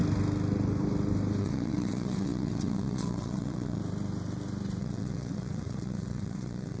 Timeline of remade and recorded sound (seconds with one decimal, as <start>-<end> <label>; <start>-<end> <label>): 0.0-1.4 recorded; 1.4-3.8 remade; 3.8-4.8 recorded; 4.8-6.8 remade